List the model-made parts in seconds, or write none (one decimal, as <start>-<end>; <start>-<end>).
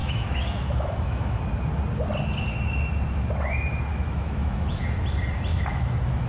0.0-1.4; 3.9-4.8; 5.5-6.3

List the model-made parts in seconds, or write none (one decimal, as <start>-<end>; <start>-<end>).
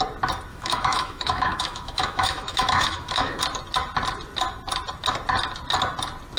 0.5-3.4